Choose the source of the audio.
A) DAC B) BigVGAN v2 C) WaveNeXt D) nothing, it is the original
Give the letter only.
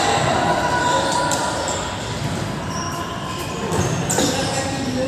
D